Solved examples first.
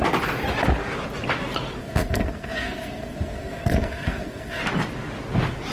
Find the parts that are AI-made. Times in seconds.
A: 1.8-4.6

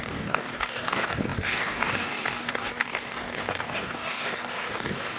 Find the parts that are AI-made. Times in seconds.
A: 0.0-5.2

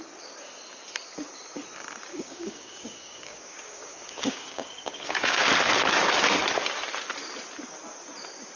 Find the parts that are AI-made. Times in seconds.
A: 2.1-5.5

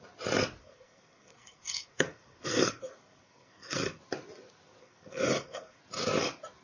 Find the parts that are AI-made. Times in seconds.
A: 0.6-4.0; 4.8-5.8

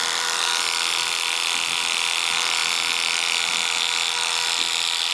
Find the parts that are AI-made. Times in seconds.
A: 0.0-2.6

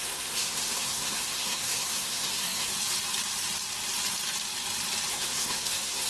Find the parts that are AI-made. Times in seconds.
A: 0.0-2.7; 5.1-6.1

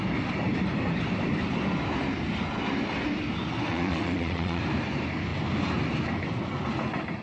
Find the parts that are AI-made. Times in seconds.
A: 3.7-4.6

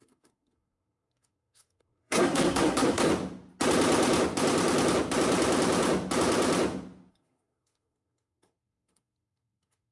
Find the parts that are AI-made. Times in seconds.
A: 0.0-3.1; 7.1-9.9